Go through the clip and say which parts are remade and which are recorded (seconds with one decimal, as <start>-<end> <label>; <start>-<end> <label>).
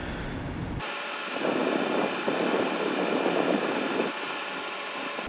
0.0-5.3 recorded